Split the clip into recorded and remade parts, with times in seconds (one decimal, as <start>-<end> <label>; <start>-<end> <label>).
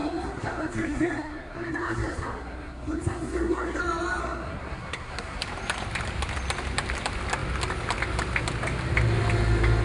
0.0-3.8 remade; 3.8-4.2 recorded; 4.2-5.4 remade; 5.4-9.8 recorded